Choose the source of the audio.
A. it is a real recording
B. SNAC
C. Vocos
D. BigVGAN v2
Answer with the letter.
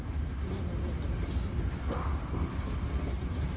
A